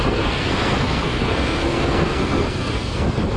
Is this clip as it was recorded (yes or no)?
no